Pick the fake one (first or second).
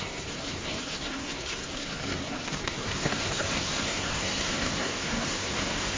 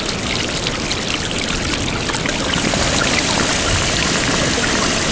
first